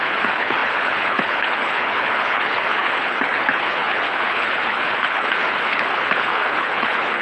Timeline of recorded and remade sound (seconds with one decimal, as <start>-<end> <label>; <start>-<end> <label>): 0.0-7.2 remade